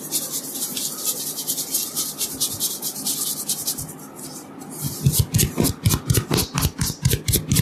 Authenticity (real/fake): real